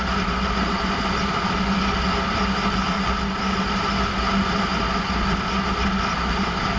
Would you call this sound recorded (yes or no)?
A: yes